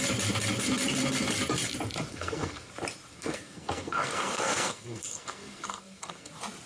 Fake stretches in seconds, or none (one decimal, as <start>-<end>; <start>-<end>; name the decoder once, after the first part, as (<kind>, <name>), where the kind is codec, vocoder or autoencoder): 2.1-2.7 (codec, SNAC); 3.1-6.3